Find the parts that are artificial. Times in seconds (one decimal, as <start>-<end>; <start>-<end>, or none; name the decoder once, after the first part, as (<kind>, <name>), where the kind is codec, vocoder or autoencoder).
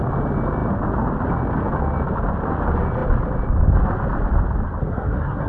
4.8-5.5 (codec, SNAC)